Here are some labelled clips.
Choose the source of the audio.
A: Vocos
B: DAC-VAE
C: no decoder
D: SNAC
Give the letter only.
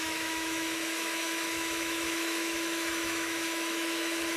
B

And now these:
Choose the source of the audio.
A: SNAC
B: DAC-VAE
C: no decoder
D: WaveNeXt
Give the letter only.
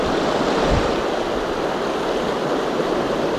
C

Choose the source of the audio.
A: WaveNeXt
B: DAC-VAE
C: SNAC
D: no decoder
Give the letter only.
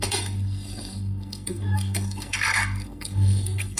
C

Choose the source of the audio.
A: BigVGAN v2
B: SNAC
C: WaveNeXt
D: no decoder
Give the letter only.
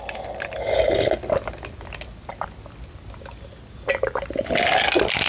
D